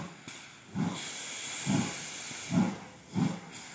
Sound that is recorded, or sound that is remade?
recorded